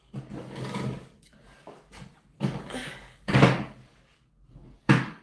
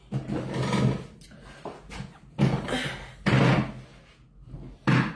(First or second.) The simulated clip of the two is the first